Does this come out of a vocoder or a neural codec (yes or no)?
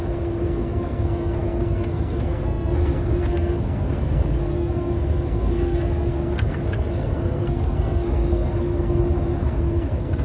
yes